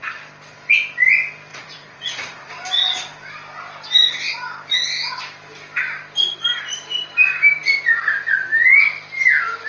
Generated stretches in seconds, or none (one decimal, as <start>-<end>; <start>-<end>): 1.5-2.5